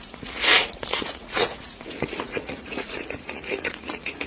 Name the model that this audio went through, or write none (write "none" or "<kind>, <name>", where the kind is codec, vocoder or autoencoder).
vocoder, Vocos